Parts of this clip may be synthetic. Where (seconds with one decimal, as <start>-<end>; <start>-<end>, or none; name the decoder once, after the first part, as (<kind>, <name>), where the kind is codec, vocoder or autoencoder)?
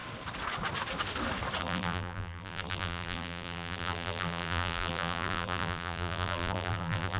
1.6-7.2 (vocoder, BigVGAN v2)